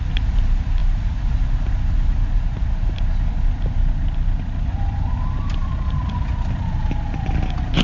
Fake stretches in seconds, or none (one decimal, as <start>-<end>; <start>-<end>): none

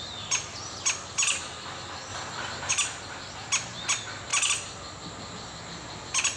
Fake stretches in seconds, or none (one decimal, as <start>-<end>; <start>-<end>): none